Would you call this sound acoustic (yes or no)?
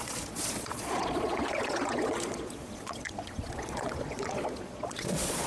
no